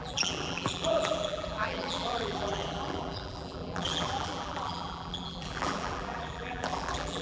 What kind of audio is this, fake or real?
fake